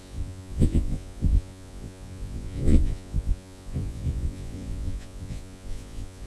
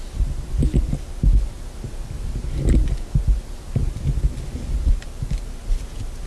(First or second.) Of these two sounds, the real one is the second